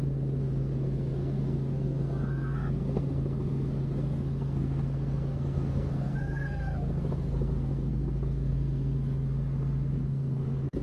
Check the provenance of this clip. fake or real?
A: fake